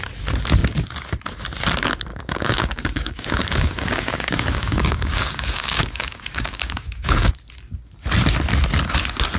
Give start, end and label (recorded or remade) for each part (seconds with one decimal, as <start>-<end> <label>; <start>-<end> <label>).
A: 0.0-2.1 recorded; 2.1-7.3 remade; 7.3-9.4 recorded